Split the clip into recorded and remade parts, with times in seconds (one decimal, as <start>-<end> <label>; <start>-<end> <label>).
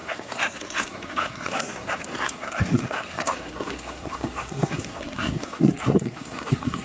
0.0-6.8 remade